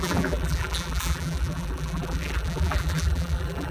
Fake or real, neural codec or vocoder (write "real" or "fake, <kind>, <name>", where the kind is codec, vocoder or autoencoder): fake, vocoder, BigVGAN v2